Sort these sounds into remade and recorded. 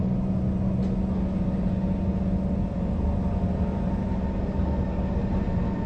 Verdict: recorded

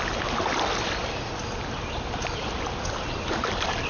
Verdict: recorded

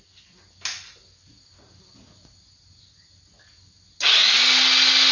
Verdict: recorded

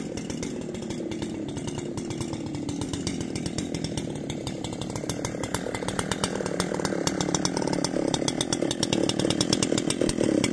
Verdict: recorded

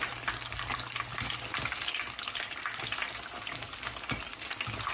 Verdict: recorded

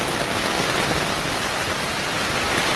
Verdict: recorded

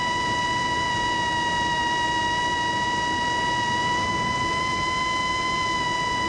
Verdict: recorded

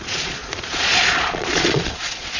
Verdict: remade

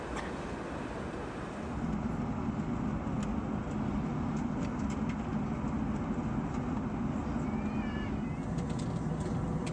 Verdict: recorded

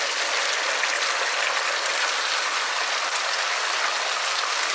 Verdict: recorded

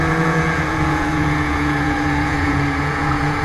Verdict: remade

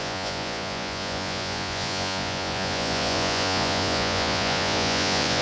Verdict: remade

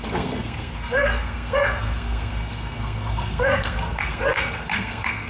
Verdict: remade